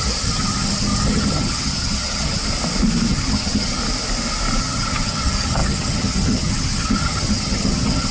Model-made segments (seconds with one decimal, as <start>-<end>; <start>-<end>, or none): 0.0-2.4; 3.1-3.8; 4.6-8.1